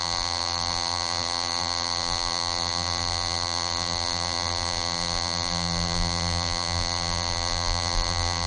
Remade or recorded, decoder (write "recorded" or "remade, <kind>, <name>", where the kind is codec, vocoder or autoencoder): remade, vocoder, BigVGAN v2